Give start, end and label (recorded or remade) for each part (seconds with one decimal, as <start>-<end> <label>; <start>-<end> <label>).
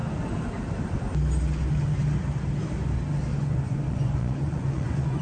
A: 0.0-3.3 recorded; 3.3-5.2 remade